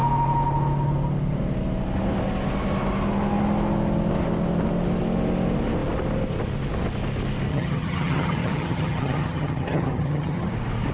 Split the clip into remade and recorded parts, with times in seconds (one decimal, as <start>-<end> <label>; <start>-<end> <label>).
0.0-7.5 recorded; 7.5-10.5 remade; 10.5-10.9 recorded